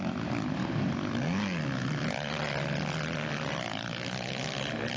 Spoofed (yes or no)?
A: no